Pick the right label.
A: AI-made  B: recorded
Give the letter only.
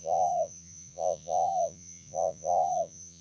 A